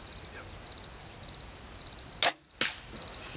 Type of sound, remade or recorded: recorded